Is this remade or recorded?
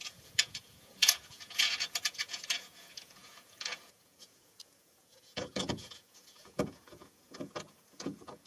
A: remade